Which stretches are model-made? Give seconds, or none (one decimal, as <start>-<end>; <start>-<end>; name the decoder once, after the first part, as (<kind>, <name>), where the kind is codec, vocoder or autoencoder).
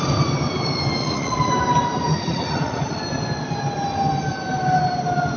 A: 1.0-1.5 (vocoder, Vocos); 2.1-3.0